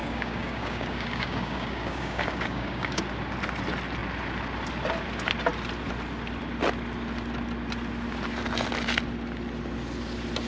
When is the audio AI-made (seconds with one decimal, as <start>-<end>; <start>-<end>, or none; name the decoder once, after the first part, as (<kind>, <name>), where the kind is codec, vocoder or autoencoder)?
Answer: 0.0-3.0 (codec, DAC)